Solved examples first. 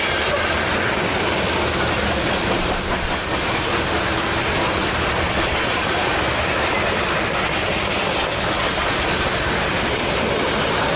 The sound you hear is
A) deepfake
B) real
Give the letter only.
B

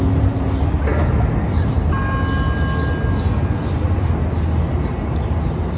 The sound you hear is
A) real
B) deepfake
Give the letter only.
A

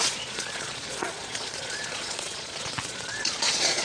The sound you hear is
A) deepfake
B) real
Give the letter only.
A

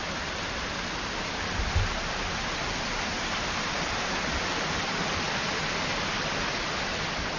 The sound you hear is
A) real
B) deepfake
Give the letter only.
A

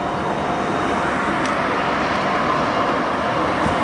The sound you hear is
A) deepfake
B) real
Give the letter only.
B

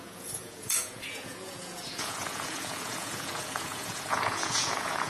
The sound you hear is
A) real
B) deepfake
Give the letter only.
B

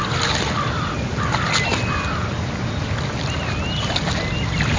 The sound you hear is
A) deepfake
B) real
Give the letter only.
B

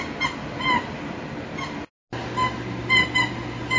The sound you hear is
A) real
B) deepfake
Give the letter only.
A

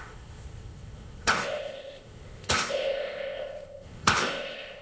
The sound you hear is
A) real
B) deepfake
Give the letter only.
B